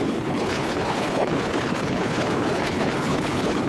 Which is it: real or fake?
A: fake